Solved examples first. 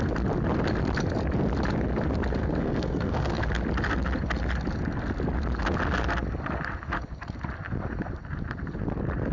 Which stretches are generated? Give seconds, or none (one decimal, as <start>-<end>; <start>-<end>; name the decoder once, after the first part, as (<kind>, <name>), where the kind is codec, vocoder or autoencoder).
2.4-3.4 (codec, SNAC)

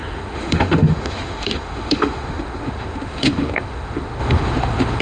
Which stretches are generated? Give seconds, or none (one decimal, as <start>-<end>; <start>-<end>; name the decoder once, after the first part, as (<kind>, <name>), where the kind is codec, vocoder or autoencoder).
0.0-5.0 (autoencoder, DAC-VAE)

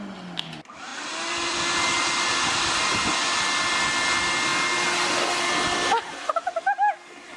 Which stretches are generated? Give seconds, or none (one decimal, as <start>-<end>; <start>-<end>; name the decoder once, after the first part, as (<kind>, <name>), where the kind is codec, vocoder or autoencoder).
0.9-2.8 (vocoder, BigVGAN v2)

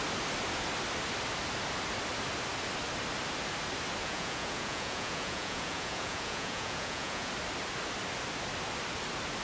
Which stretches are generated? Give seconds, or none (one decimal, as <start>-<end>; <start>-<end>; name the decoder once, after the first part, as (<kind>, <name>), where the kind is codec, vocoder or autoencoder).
4.0-7.3 (vocoder, Vocos)